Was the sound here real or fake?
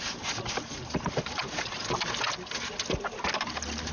real